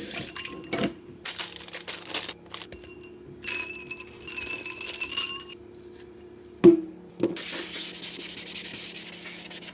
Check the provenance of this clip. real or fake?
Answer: real